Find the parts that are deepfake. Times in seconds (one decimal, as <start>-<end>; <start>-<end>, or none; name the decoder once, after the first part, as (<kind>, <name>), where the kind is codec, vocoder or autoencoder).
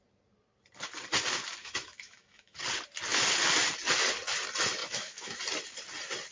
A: 1.6-2.6 (autoencoder, DAC-VAE); 4.8-5.4